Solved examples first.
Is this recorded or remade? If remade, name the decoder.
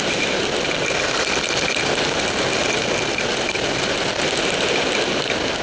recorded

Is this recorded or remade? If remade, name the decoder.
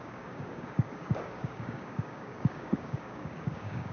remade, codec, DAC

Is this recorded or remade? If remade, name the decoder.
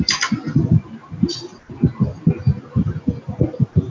recorded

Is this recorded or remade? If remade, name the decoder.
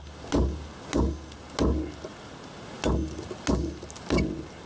recorded